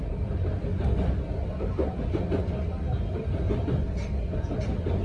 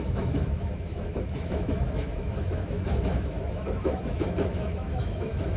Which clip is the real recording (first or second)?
first